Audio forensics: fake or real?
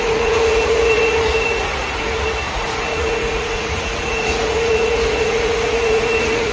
fake